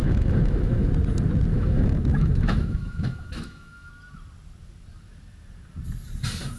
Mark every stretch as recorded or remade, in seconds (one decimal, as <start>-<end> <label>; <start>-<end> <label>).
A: 0.0-0.9 remade; 0.9-1.5 recorded; 1.5-3.9 remade; 3.9-6.6 recorded